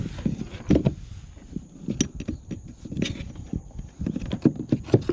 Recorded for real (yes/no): yes